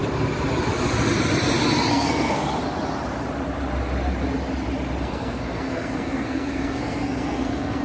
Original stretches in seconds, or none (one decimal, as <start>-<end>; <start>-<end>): 0.0-1.9; 2.4-5.0